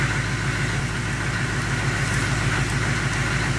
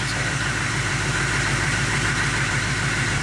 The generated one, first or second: second